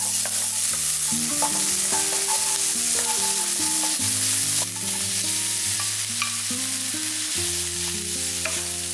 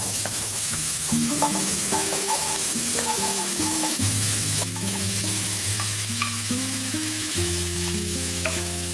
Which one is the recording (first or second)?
first